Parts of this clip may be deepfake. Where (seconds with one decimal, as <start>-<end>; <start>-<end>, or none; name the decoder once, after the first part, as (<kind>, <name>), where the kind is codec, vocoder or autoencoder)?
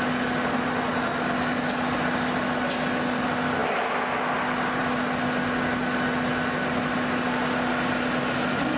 none